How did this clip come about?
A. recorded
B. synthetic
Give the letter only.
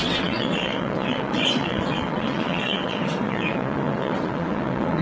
B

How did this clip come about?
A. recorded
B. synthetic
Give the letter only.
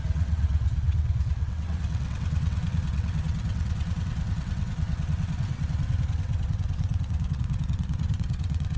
B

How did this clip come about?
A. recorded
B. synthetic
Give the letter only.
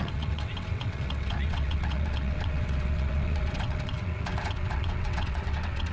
B